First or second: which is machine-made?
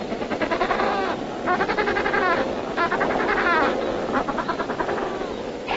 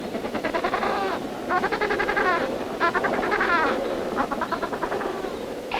second